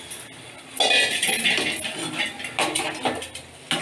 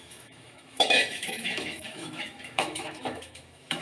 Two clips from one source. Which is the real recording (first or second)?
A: first